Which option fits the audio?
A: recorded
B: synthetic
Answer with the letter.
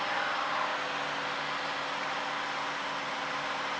A